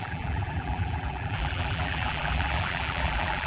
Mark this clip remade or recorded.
remade